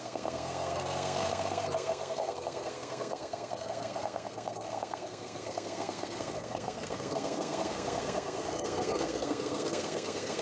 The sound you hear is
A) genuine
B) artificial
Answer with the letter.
B